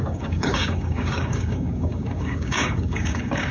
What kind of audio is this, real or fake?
fake